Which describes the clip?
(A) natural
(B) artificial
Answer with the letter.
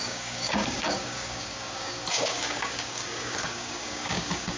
B